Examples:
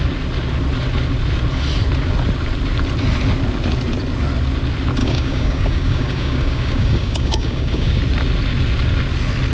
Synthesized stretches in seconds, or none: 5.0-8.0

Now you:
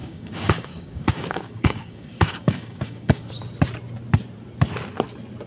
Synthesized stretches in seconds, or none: 0.0-3.3

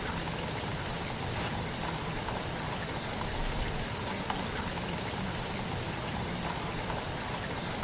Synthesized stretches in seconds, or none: none